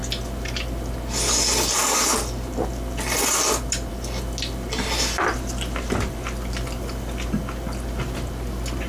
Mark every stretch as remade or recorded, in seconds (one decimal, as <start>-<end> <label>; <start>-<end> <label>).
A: 0.0-8.9 recorded